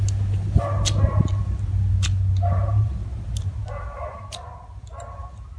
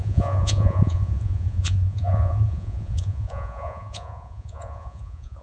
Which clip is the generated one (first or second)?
second